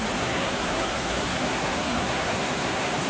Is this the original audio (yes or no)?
no